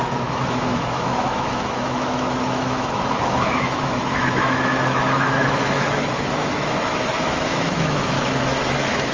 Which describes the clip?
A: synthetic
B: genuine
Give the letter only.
A